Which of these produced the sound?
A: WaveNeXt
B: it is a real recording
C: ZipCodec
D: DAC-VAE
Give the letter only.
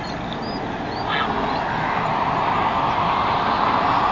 B